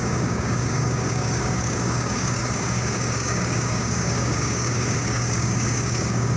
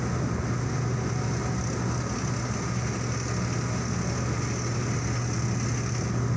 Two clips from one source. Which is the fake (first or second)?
first